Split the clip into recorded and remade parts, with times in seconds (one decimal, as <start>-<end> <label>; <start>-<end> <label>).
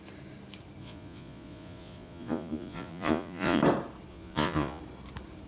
0.0-0.8 recorded; 0.8-3.6 remade; 3.6-4.1 recorded; 4.1-4.8 remade; 4.8-5.5 recorded